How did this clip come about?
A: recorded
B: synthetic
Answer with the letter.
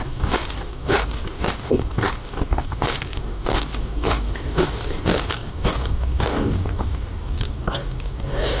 B